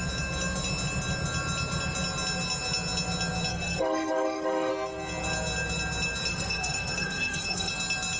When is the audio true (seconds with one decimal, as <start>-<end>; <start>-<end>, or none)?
0.0-3.5; 4.7-6.3; 7.7-8.2